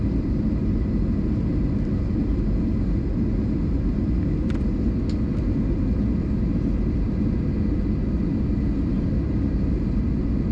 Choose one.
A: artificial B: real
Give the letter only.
B